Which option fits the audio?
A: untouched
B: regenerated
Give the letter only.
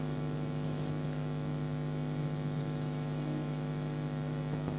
B